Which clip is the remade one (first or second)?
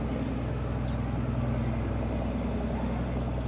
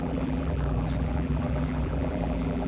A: second